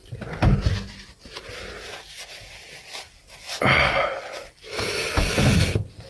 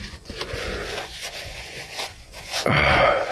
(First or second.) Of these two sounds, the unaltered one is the first